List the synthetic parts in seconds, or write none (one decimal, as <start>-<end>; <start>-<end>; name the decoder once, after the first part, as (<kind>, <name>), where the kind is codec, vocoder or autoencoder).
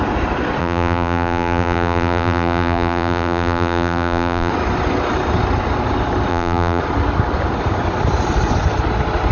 0.6-4.5 (vocoder, BigVGAN v2); 6.3-6.8